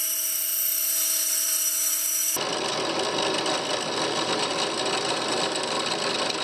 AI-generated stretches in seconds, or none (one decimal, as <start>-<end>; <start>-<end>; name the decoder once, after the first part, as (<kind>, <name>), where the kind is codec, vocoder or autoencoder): none